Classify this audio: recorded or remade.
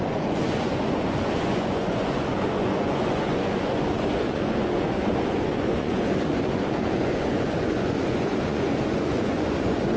remade